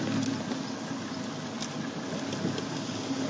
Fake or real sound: real